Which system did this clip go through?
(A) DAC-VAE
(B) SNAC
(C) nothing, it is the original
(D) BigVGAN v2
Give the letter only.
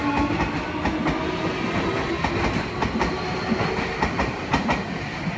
C